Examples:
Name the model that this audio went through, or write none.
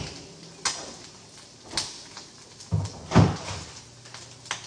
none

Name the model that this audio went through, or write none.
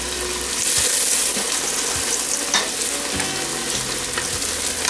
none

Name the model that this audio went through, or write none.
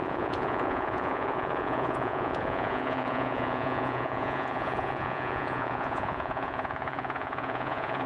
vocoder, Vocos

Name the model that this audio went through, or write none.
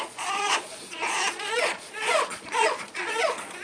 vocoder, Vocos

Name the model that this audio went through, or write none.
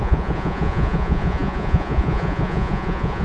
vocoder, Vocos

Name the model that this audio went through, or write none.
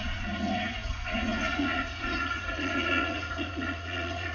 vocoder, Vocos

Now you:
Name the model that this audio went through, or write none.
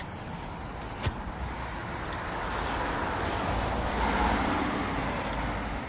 none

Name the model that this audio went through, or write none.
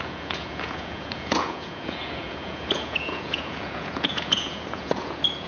vocoder, Vocos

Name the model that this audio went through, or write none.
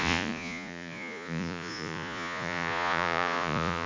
vocoder, Vocos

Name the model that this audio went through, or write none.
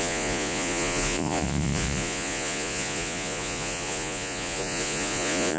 vocoder, Vocos